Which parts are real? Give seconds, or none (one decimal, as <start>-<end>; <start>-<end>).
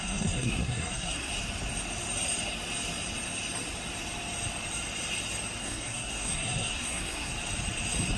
1.3-5.6; 7.3-8.2